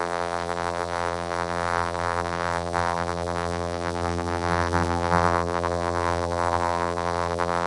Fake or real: fake